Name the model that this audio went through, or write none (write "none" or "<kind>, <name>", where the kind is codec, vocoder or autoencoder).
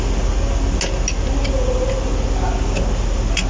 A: none